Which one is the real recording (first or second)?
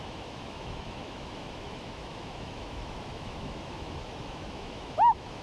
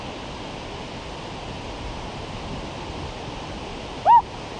second